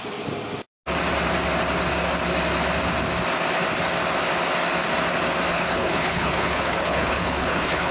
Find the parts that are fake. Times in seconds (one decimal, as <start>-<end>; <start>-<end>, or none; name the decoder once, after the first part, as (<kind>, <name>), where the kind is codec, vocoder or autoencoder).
5.5-7.9 (codec, HILCodec)